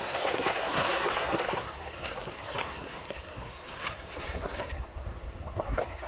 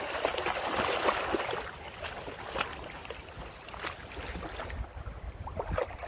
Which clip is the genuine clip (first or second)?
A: second